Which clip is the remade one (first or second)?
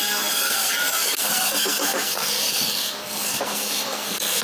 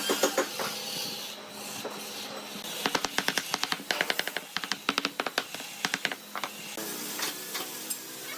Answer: first